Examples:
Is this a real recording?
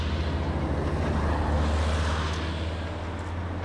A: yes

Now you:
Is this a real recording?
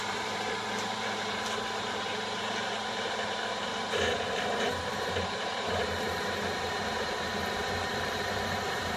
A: no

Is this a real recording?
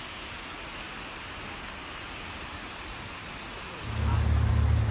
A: yes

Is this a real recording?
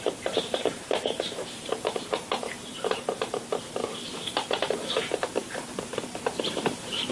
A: no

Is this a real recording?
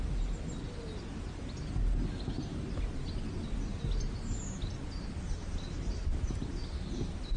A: yes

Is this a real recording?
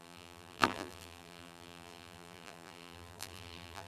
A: no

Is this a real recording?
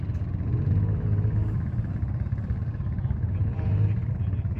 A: yes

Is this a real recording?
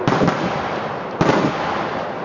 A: yes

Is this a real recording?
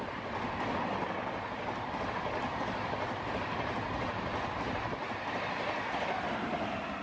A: yes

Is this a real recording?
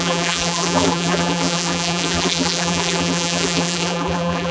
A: no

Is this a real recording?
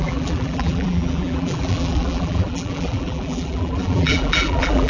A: no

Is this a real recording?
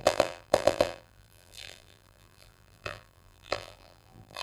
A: no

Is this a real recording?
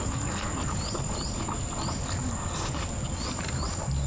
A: yes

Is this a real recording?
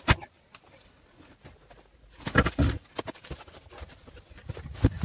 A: yes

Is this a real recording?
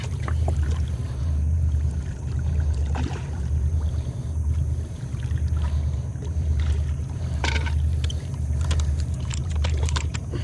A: no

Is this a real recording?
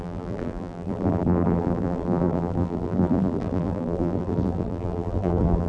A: no